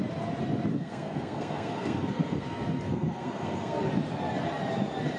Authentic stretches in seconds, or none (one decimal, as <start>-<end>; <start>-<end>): 0.0-0.7; 3.8-5.2